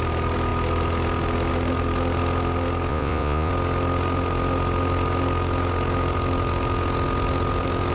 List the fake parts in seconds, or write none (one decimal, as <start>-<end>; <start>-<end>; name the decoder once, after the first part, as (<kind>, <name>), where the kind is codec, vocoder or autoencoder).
2.9-3.5 (vocoder, Vocos)